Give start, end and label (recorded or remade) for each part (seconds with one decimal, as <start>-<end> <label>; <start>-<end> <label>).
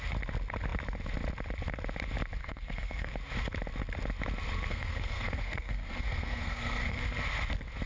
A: 0.0-2.4 recorded; 2.4-3.1 remade; 3.1-4.7 recorded; 4.7-7.0 remade; 7.0-7.9 recorded